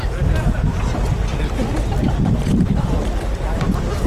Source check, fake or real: real